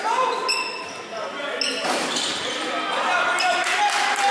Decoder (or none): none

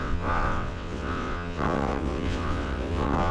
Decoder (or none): vocoder, WaveNeXt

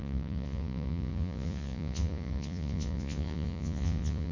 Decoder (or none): vocoder, Vocos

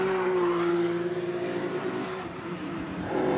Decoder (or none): vocoder, BigVGAN v2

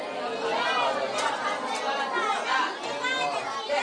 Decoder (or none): none